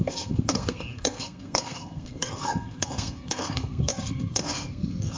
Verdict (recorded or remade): remade